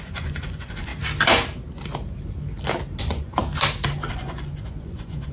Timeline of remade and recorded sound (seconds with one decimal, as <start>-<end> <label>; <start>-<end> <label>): 0.0-0.9 remade; 0.9-3.0 recorded; 3.0-3.4 remade; 3.4-4.1 recorded; 4.1-5.3 remade